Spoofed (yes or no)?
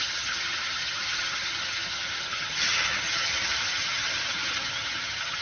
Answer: yes